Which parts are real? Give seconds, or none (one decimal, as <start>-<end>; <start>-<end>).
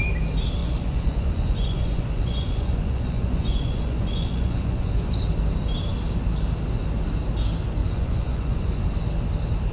0.0-0.6; 5.2-7.8; 8.8-9.7